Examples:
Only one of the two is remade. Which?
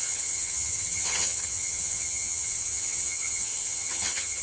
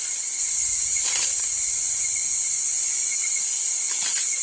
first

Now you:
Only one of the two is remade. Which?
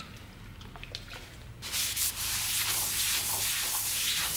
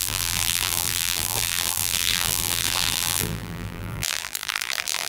second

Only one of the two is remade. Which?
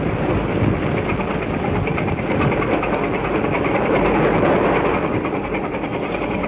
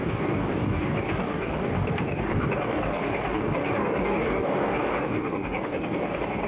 second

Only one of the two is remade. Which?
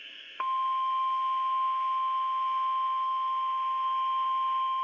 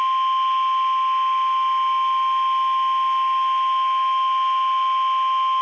first